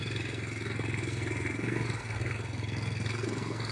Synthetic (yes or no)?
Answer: yes